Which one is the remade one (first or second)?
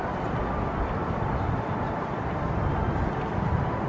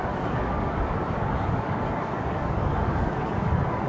second